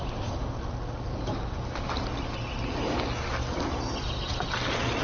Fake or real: real